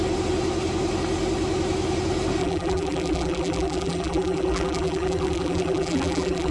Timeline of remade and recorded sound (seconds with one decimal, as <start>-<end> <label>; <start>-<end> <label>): 0.0-2.4 recorded; 2.4-6.5 remade